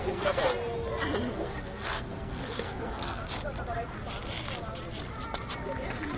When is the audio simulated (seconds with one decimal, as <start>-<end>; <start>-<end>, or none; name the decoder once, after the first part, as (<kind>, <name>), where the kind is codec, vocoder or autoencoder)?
0.0-0.4 (codec, SNAC); 1.3-3.2